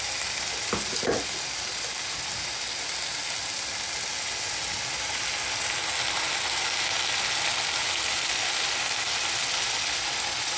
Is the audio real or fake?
real